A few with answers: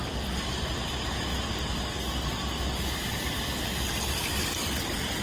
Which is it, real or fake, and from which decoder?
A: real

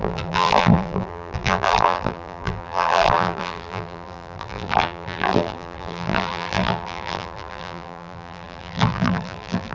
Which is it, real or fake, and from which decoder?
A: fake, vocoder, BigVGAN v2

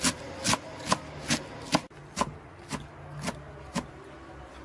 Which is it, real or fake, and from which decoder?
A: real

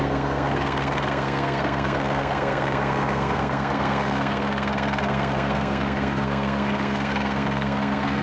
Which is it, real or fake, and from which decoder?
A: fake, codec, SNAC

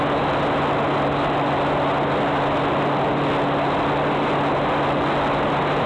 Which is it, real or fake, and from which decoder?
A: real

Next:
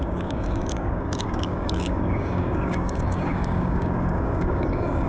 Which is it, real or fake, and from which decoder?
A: fake, codec, DAC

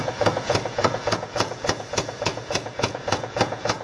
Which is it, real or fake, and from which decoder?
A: fake, vocoder, Vocos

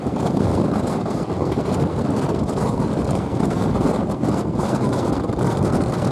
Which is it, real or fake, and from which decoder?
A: fake, codec, SNAC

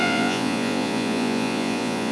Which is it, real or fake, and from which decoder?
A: fake, vocoder, Vocos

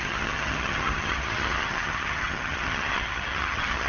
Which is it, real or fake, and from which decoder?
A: fake, vocoder, HiFi-GAN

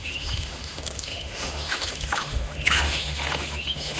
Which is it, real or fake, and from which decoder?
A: fake, autoencoder, DAC-VAE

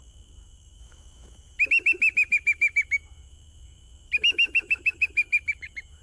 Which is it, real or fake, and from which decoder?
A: fake, autoencoder, DAC-VAE